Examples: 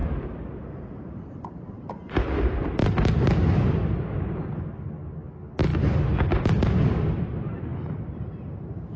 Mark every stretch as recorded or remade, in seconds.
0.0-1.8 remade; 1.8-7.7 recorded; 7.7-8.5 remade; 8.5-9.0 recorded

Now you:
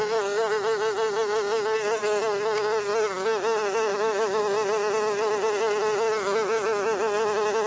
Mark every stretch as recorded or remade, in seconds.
0.0-3.9 recorded; 3.9-4.4 remade; 4.4-7.7 recorded

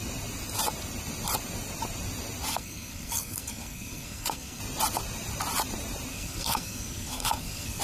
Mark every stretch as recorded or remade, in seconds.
0.0-2.5 recorded; 2.5-4.6 remade; 4.6-6.1 recorded; 6.1-7.8 remade

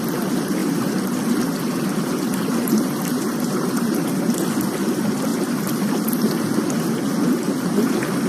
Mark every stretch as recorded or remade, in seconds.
0.0-5.3 recorded; 5.3-6.1 remade; 6.1-8.3 recorded